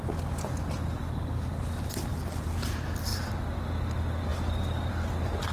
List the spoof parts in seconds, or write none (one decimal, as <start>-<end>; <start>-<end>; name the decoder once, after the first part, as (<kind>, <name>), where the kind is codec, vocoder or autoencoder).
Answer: 3.1-3.7 (vocoder, BigVGAN v2)